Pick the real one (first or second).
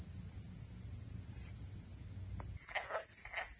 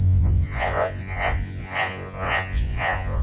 first